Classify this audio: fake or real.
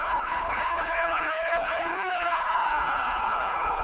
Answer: fake